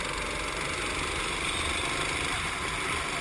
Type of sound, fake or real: real